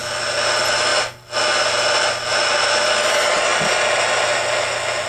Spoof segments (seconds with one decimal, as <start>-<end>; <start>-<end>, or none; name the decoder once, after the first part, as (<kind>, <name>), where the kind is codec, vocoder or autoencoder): none